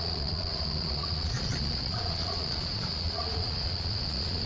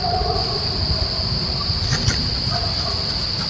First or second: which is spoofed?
first